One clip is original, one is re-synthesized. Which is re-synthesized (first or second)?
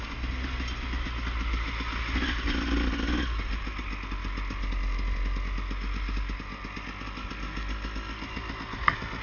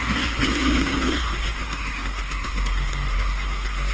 second